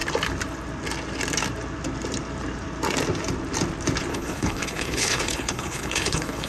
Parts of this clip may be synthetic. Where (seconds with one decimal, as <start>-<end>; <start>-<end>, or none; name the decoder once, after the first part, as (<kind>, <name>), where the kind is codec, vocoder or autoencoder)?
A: 4.1-6.5 (codec, HILCodec)